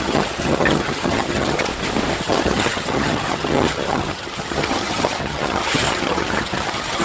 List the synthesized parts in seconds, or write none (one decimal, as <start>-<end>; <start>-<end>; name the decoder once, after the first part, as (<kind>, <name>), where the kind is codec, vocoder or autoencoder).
0.0-1.7 (vocoder, HiFi-GAN); 2.2-7.0